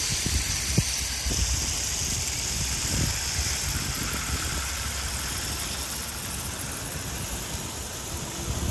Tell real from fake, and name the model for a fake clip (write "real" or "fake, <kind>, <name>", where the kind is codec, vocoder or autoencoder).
real